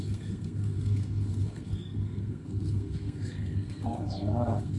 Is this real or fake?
fake